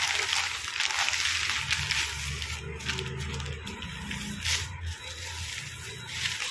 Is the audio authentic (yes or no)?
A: yes